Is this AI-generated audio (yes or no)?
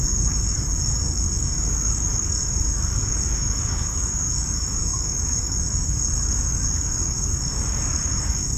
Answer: yes